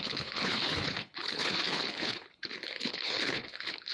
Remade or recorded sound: remade